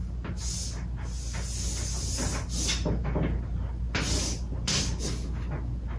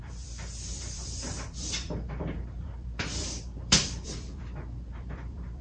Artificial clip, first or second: second